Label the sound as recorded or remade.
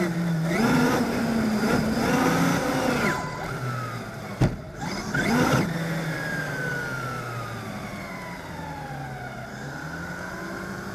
recorded